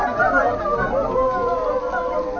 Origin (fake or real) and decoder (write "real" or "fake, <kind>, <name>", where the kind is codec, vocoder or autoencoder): real